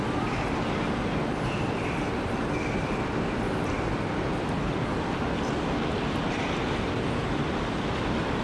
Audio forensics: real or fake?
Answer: fake